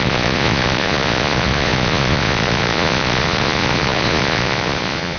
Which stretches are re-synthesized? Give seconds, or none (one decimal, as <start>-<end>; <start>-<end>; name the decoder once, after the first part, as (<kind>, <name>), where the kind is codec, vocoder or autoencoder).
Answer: 0.0-5.2 (vocoder, Vocos)